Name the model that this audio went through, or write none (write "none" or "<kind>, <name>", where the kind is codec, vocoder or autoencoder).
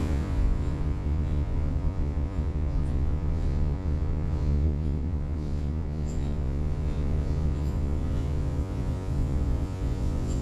vocoder, Vocos